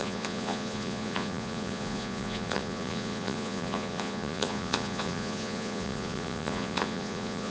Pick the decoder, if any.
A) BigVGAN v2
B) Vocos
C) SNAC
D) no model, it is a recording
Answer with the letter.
B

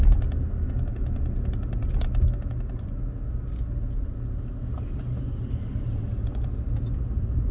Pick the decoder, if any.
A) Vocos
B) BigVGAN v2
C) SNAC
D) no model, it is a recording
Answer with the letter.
D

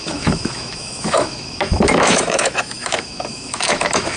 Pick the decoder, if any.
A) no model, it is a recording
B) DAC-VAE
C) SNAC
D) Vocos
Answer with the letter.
B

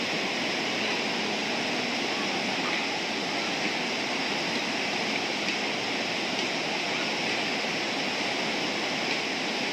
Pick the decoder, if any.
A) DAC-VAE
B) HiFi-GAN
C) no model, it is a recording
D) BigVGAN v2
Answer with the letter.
C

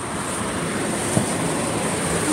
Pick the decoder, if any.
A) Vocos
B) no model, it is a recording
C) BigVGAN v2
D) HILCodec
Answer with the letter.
C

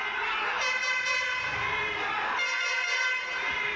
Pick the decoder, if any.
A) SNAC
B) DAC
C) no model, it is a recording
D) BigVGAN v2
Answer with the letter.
C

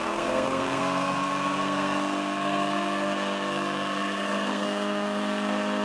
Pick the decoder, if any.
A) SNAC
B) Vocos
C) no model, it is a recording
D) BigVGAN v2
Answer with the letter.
A